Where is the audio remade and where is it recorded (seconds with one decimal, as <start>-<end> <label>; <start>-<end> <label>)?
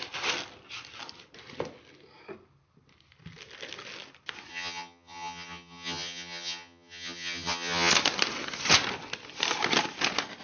0.0-4.5 recorded; 4.5-7.9 remade; 7.9-10.4 recorded